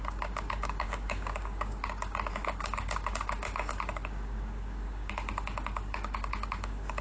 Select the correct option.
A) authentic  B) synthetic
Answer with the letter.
B